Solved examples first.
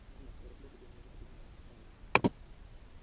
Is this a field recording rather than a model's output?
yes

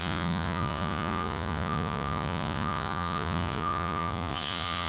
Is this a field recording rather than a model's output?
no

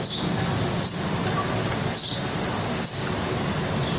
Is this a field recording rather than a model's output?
yes